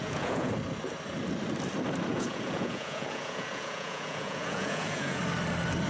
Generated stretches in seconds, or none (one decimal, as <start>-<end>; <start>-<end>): 0.0-0.5; 2.1-5.2